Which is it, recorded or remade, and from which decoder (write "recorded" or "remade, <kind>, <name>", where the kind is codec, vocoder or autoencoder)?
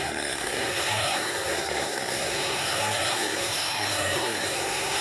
remade, codec, SNAC